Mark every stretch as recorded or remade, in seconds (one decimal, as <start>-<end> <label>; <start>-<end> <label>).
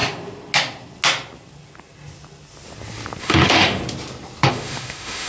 0.0-3.2 recorded; 3.2-3.8 remade; 3.8-4.5 recorded; 4.5-5.3 remade